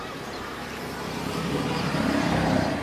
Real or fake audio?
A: fake